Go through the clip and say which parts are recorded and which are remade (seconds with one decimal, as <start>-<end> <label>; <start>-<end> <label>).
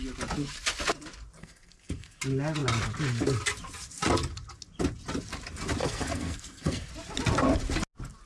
0.0-1.4 recorded; 1.4-2.2 remade; 2.2-5.8 recorded; 5.8-6.9 remade; 6.9-8.3 recorded